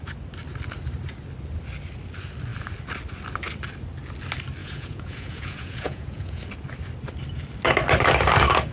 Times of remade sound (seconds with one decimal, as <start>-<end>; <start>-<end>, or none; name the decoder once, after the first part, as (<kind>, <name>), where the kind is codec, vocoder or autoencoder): 4.6-6.4 (vocoder, Vocos)